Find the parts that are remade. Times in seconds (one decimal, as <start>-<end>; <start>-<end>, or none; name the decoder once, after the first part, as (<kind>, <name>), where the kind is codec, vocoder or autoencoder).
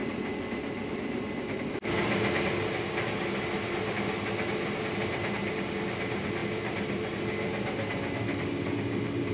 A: none